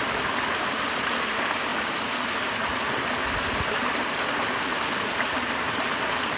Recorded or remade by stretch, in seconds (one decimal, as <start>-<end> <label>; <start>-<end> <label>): 0.0-1.7 remade; 1.7-3.7 recorded; 3.7-6.4 remade